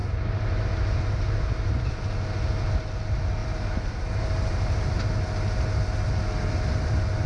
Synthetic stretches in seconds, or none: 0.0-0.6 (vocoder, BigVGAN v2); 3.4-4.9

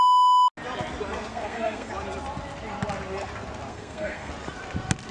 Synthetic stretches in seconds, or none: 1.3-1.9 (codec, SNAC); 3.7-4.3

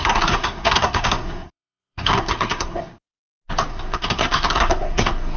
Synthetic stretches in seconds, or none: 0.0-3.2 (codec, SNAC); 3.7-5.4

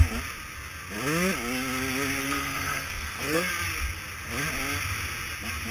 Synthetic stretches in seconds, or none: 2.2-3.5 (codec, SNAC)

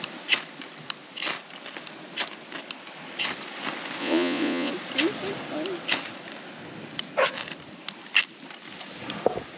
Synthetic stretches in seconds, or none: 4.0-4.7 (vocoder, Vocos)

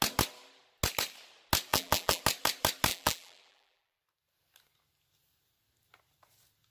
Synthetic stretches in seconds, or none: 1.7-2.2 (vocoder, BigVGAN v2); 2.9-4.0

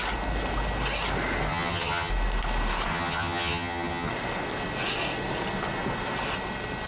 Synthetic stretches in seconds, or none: 1.5-2.1 (vocoder, HiFi-GAN); 2.9-4.1

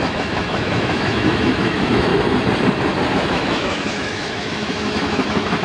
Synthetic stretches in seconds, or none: 0.0-2.1 (autoencoder, DAC-VAE); 3.1-5.6